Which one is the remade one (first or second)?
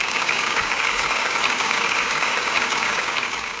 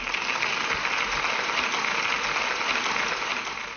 first